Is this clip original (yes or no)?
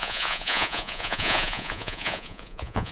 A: no